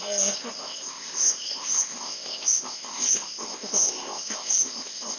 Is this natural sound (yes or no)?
no